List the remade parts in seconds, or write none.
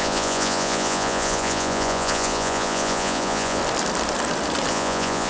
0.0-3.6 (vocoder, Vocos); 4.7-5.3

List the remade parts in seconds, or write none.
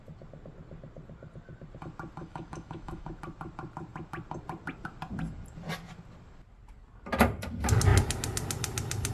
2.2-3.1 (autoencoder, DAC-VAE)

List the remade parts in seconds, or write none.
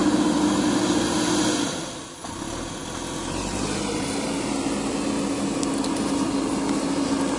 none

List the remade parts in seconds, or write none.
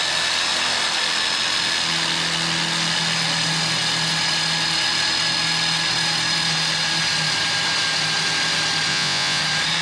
8.9-9.4 (vocoder, Vocos)